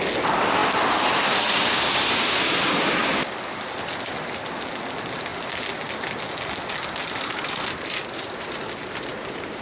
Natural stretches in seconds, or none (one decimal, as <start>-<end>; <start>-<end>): 0.0-9.6